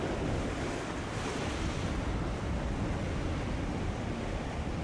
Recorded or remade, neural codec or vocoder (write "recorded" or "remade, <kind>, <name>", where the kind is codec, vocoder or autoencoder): recorded